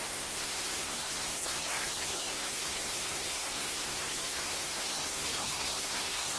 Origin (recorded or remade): remade